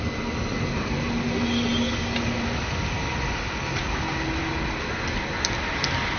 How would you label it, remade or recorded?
recorded